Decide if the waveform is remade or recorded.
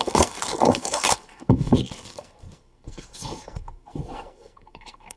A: remade